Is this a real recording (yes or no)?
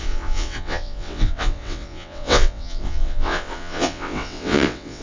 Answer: no